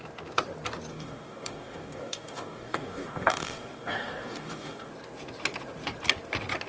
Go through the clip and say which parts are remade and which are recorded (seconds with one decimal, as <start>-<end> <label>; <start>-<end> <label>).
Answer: 0.0-0.9 recorded; 0.9-4.9 remade; 4.9-6.7 recorded